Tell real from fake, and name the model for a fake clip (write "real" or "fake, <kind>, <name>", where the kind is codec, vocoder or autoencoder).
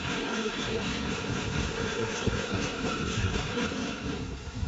fake, codec, SNAC